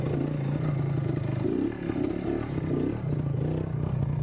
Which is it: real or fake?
real